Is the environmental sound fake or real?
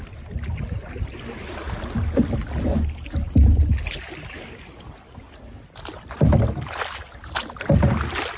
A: real